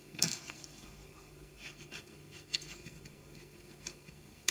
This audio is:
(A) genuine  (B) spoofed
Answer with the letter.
B